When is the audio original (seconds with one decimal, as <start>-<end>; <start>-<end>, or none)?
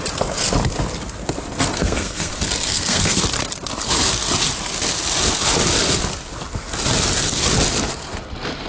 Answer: 0.0-1.7; 2.3-2.7; 3.2-8.7